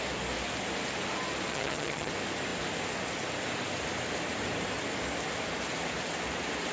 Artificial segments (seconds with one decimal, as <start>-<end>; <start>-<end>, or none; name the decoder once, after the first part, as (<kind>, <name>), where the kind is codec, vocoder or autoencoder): 1.5-2.1 (vocoder, HiFi-GAN)